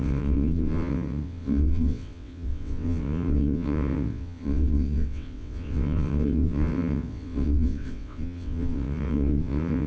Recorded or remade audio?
remade